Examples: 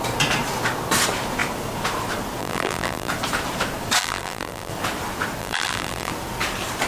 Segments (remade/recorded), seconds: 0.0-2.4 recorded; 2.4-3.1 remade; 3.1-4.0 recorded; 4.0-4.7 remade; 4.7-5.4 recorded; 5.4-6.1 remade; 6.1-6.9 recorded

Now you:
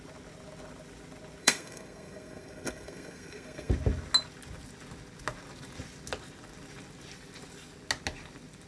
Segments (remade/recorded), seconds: 0.0-1.4 recorded; 1.4-3.7 remade; 3.7-8.7 recorded

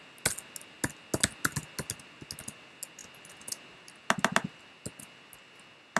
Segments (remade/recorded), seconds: 0.0-6.0 recorded

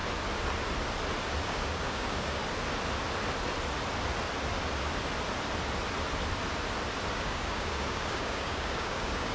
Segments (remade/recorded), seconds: 0.0-1.4 recorded; 1.4-2.4 remade; 2.4-7.1 recorded; 7.1-9.3 remade

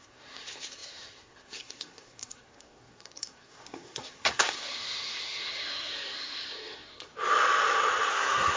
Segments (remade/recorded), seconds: 0.0-7.1 remade; 7.1-8.1 recorded; 8.1-8.6 remade